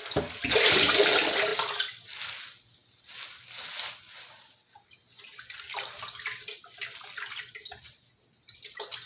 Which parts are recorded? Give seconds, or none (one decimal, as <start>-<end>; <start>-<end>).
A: 0.0-9.1